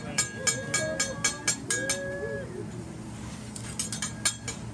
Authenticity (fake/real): real